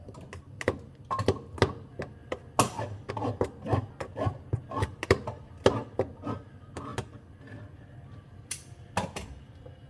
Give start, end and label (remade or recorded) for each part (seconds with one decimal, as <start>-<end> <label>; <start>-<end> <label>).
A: 0.0-9.9 recorded